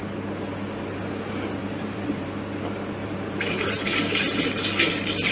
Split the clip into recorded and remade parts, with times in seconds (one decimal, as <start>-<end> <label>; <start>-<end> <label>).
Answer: 0.0-1.6 recorded; 1.6-2.3 remade; 2.3-3.0 recorded; 3.0-3.7 remade; 3.7-5.3 recorded